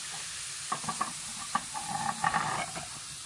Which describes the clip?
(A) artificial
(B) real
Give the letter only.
B